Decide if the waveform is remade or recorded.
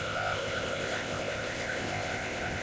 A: remade